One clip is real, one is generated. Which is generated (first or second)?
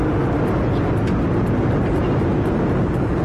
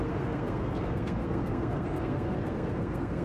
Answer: second